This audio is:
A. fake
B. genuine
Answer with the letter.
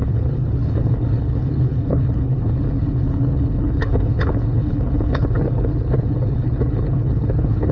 A